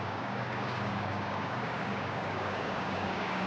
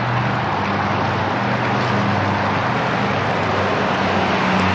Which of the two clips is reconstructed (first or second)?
first